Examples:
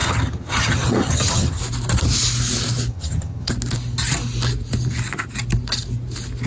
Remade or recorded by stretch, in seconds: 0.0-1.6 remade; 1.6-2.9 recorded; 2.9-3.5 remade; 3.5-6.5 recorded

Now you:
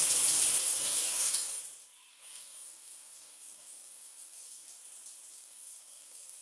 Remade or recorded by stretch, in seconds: 0.0-0.6 recorded; 0.6-1.6 remade; 1.6-2.1 recorded; 2.1-4.8 remade; 4.8-5.3 recorded; 5.3-6.4 remade

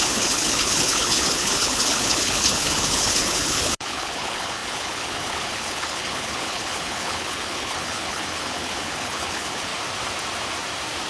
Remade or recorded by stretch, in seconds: 0.0-9.7 remade; 9.7-11.1 recorded

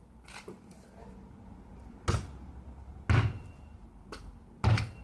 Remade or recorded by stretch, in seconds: 0.0-5.0 recorded

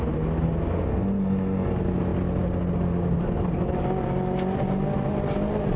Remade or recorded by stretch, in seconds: 0.0-0.9 recorded; 0.9-1.7 remade; 1.7-5.8 recorded

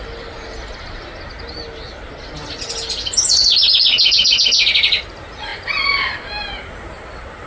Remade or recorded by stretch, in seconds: 0.0-7.5 recorded